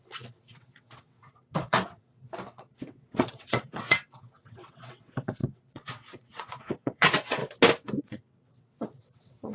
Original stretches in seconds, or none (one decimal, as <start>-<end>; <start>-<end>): 7.4-8.0